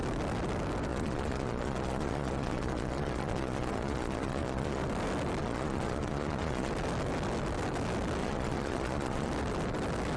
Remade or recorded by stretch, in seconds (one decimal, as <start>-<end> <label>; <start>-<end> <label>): 0.0-0.9 recorded; 0.9-4.8 remade; 4.8-5.4 recorded; 5.4-6.7 remade; 6.7-8.2 recorded; 8.2-9.3 remade; 9.3-10.2 recorded